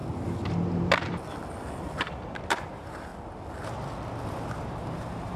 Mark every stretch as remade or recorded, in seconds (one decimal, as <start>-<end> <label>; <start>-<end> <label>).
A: 0.0-2.5 recorded; 2.5-3.1 remade; 3.1-4.3 recorded; 4.3-5.4 remade